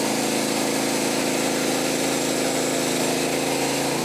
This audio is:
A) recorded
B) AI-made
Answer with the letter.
A